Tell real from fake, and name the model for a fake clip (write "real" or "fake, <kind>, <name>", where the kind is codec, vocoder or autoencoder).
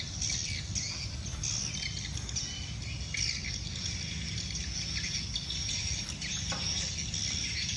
real